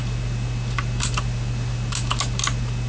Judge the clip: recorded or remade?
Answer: recorded